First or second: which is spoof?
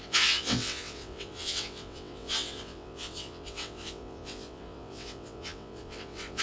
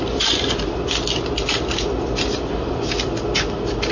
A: first